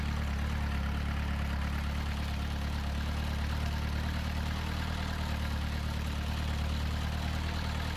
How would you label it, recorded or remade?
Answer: recorded